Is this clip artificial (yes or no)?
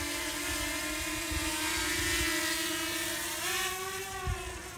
no